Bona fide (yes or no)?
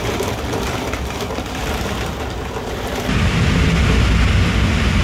no